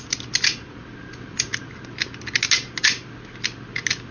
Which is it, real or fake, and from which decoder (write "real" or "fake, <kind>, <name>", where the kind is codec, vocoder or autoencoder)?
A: real